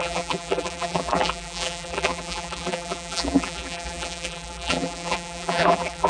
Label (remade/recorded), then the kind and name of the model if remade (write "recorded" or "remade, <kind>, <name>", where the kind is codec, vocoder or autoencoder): remade, vocoder, BigVGAN v2